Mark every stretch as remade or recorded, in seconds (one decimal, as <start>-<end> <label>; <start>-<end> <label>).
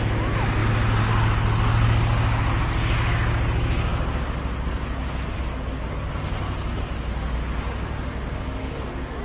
0.0-9.2 recorded